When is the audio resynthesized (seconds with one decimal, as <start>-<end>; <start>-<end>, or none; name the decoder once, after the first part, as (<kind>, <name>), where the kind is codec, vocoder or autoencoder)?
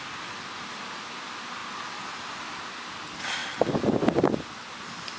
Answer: none